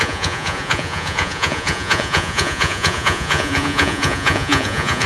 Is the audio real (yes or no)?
no